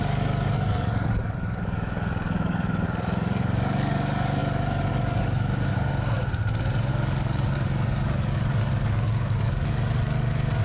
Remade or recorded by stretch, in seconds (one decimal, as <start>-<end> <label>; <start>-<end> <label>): 0.0-5.7 remade; 5.7-6.9 recorded; 6.9-10.6 remade